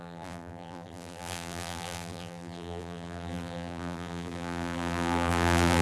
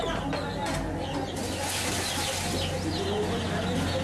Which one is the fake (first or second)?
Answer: first